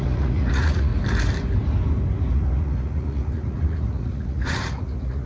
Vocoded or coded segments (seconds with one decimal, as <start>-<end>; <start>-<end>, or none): 0.0-0.9; 2.3-5.3